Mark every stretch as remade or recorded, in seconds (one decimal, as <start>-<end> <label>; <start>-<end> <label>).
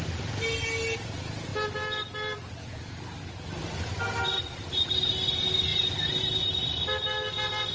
0.0-7.7 recorded